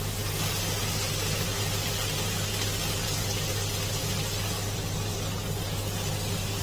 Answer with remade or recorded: recorded